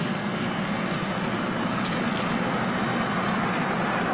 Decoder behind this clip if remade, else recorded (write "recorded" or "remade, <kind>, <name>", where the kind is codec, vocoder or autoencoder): recorded